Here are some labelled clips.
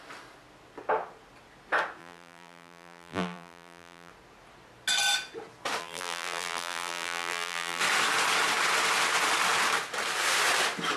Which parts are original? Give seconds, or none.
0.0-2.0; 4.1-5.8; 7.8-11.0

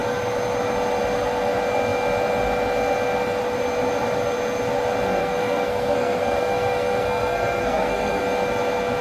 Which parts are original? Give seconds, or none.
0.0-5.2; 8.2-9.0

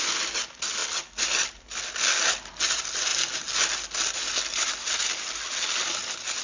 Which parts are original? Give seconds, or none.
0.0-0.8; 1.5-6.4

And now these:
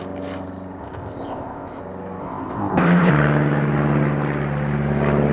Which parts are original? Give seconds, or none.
0.0-0.8; 1.8-2.2; 3.1-5.3

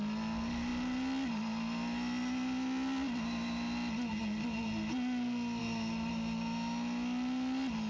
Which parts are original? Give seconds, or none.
0.0-7.9

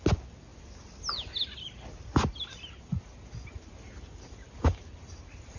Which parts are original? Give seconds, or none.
0.0-5.6